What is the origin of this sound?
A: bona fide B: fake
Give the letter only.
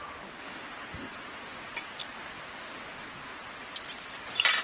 A